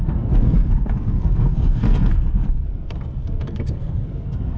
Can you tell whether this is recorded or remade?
remade